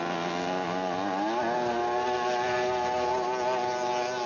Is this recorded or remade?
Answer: recorded